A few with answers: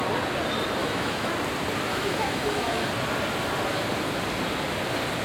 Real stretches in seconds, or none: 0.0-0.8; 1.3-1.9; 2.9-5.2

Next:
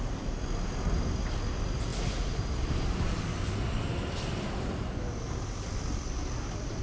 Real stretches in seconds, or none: 0.0-6.8

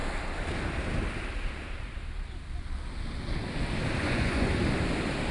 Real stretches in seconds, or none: 0.0-4.0; 4.5-5.3

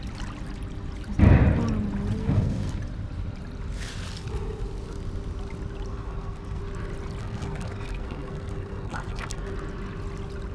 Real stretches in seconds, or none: 0.0-2.2; 2.8-5.9; 6.6-7.2; 9.5-10.5

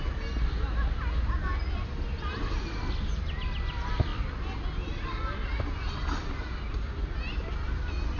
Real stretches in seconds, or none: 0.0-8.2